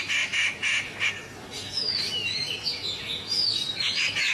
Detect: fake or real fake